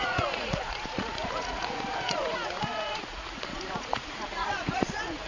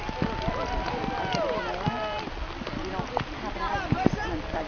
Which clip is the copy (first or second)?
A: first